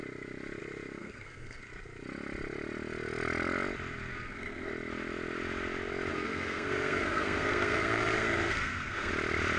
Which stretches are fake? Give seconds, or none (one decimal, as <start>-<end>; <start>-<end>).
1.0-1.6; 4.1-4.7; 6.1-9.1